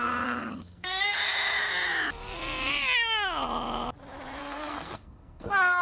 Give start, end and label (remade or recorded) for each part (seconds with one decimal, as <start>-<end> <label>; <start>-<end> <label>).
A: 0.0-1.2 remade; 1.2-4.4 recorded; 4.4-5.8 remade